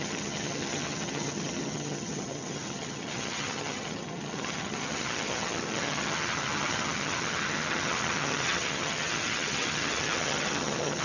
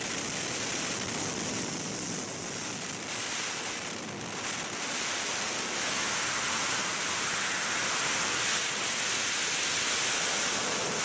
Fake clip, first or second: first